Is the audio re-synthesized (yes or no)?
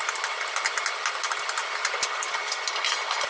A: no